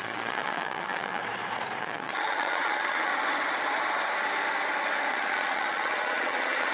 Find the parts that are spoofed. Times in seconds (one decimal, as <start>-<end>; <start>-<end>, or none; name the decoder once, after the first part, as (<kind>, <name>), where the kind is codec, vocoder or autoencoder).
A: 0.0-1.2 (vocoder, Vocos); 1.8-3.1; 5.1-6.7